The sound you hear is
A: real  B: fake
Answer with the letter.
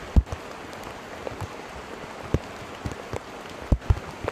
A